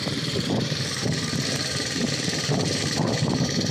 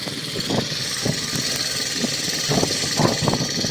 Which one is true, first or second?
second